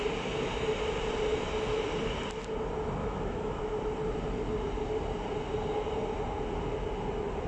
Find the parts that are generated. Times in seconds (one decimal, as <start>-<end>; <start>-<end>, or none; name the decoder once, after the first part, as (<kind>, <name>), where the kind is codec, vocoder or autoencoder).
3.0-3.6 (autoencoder, DAC-VAE)